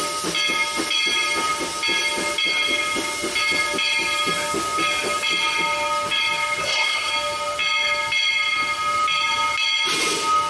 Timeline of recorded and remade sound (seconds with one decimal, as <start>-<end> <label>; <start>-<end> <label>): 0.0-6.6 recorded; 6.6-7.1 remade; 7.1-10.5 recorded